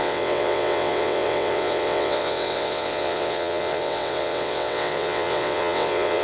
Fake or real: fake